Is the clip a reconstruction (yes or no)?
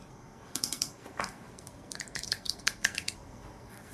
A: yes